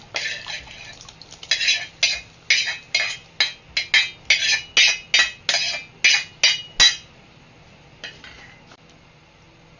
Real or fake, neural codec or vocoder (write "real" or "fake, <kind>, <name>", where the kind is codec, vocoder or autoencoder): real